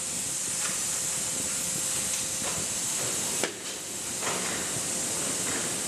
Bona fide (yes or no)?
yes